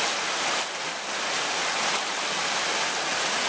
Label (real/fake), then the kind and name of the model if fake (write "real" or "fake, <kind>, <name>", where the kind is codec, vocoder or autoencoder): real